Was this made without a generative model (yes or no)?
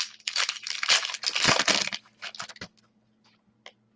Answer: yes